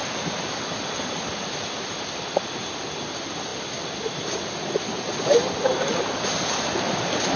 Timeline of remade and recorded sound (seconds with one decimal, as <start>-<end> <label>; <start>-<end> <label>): 0.0-7.4 recorded